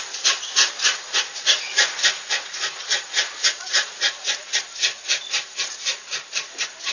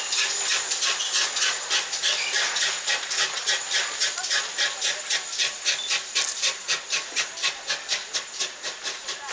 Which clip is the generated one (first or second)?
first